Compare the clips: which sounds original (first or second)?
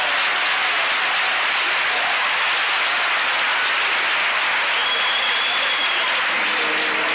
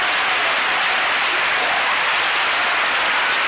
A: first